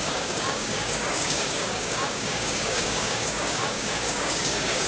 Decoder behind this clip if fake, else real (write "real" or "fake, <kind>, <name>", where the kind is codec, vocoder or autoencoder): fake, codec, DAC